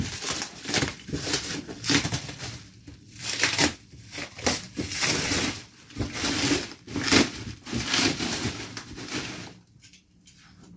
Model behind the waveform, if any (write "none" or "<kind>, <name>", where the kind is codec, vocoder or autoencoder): vocoder, BigVGAN v2